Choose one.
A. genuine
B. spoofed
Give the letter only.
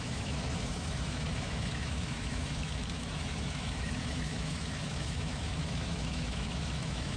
B